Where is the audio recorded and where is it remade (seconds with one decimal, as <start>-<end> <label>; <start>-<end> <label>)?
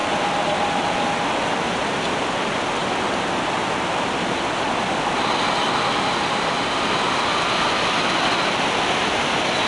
0.0-9.7 recorded